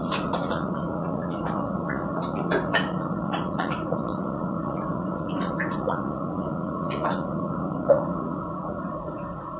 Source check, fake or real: fake